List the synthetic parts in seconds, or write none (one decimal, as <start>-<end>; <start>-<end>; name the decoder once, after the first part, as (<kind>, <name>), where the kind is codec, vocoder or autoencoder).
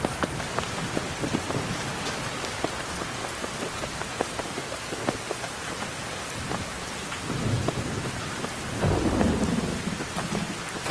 9.7-10.2 (vocoder, BigVGAN v2)